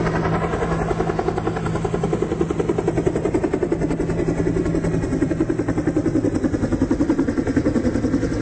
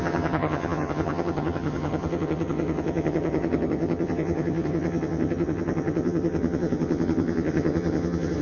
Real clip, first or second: first